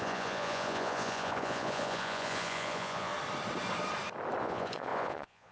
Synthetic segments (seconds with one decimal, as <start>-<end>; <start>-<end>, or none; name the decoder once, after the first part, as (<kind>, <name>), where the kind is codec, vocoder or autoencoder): 0.0-3.1 (vocoder, Vocos); 4.4-5.5